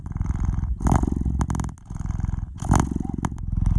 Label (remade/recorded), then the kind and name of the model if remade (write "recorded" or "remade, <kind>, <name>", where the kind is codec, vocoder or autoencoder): recorded